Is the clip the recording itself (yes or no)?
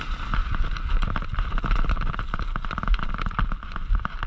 yes